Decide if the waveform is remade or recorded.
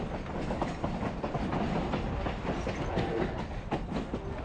recorded